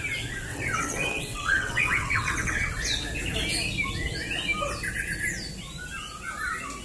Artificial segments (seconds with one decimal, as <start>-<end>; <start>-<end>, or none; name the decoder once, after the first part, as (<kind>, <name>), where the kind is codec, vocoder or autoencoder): 0.5-2.7 (vocoder, WaveNeXt)